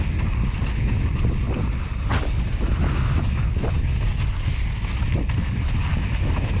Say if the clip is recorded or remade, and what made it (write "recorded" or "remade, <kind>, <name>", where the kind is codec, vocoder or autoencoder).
recorded